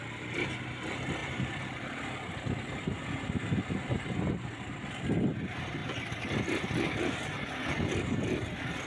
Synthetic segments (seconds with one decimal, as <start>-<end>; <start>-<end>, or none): 1.2-2.3; 5.8-6.4